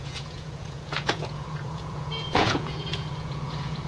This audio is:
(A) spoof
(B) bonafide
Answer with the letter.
A